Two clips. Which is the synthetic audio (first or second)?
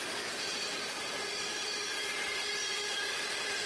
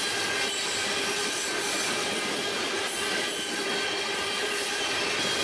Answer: first